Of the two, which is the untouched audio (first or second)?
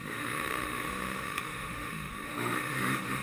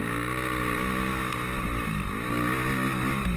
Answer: second